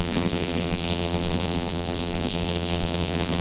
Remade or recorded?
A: remade